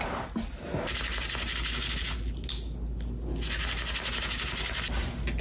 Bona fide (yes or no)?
yes